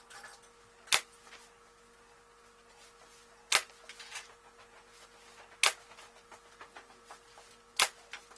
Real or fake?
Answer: real